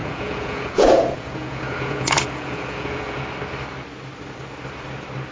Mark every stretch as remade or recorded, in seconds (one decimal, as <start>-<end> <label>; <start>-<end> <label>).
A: 0.0-3.2 remade; 3.2-5.3 recorded